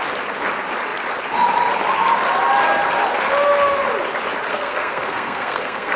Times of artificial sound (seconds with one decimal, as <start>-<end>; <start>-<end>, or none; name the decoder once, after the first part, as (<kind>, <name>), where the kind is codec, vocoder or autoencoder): 4.5-6.0 (codec, SNAC)